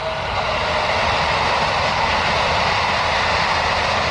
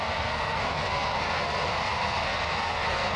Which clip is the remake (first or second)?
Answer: second